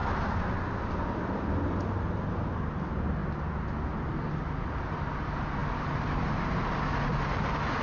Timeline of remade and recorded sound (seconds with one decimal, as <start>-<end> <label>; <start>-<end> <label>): 0.0-7.8 recorded